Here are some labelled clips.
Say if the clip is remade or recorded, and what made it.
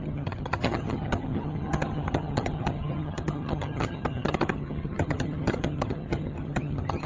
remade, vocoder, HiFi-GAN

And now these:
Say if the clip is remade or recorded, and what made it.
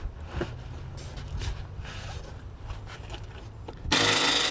recorded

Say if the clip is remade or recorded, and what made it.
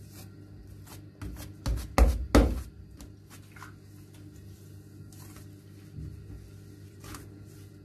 recorded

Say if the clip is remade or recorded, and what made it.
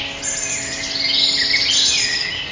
recorded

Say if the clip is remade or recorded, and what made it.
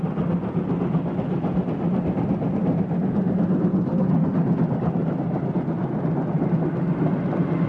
recorded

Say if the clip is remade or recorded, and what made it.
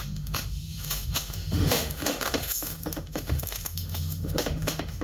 remade, autoencoder, DAC-VAE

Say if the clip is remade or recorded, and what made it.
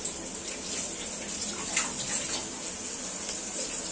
recorded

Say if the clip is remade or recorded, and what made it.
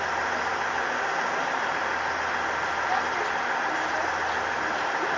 recorded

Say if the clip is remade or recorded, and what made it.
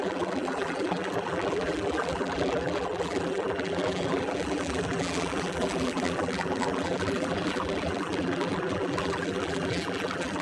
remade, vocoder, BigVGAN v2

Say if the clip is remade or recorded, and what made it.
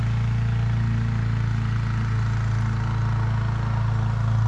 recorded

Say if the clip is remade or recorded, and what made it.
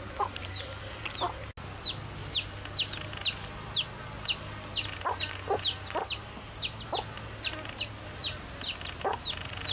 recorded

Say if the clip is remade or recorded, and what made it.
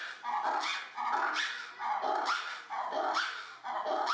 recorded